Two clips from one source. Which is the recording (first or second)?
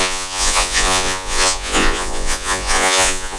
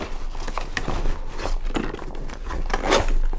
second